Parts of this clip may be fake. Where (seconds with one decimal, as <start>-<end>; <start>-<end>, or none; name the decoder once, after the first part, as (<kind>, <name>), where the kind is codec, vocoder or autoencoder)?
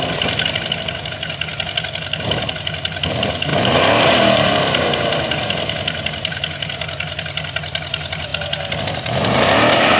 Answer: 0.0-1.5 (vocoder, BigVGAN v2); 2.4-3.5; 4.0-8.3; 8.8-10.0